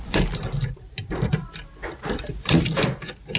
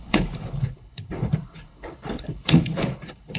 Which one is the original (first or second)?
first